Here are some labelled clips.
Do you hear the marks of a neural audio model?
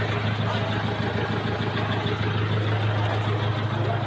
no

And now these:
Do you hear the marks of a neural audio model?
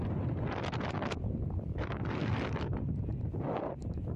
no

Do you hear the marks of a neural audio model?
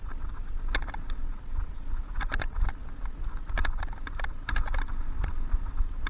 no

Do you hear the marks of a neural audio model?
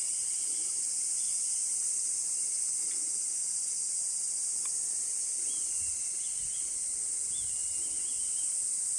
no